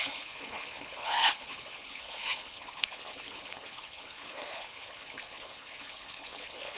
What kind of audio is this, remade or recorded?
remade